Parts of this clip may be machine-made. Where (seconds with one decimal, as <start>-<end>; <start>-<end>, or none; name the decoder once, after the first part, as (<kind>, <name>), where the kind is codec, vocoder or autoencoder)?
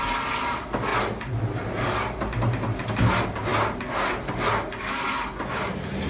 none